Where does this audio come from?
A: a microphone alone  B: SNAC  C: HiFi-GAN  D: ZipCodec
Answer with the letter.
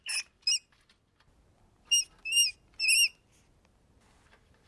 A